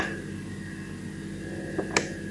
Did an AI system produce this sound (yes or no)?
no